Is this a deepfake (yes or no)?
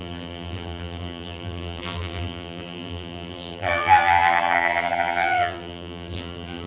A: yes